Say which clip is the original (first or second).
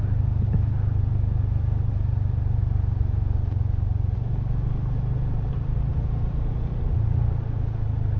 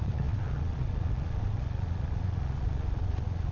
first